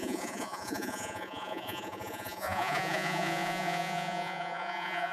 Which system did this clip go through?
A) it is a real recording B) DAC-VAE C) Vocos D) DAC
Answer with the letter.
C